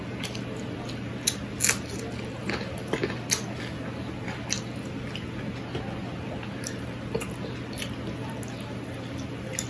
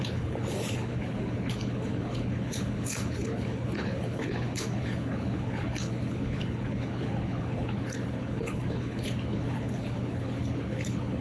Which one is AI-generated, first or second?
second